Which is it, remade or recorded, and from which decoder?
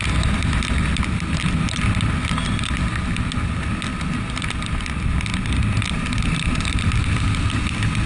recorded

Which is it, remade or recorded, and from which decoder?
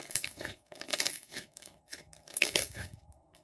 remade, codec, SNAC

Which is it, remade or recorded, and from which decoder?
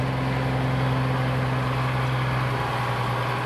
recorded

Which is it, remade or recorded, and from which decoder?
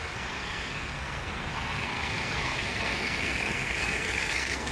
remade, codec, SNAC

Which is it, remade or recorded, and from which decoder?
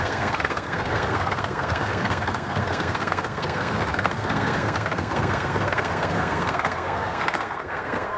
remade, codec, SNAC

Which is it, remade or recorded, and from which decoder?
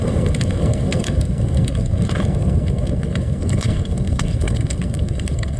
remade, codec, SNAC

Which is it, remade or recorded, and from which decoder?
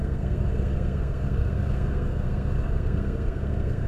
remade, codec, SNAC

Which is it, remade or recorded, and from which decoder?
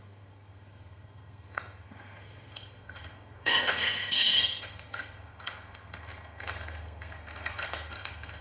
remade, codec, SNAC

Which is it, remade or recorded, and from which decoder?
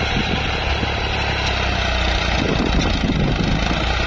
recorded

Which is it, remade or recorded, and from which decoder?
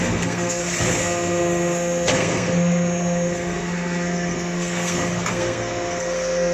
remade, codec, SNAC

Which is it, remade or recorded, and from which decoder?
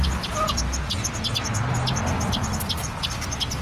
recorded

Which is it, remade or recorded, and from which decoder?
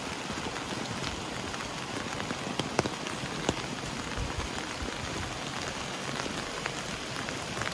recorded